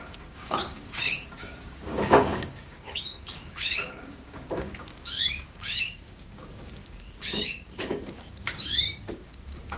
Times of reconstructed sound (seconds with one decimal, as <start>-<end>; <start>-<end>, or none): 0.0-9.8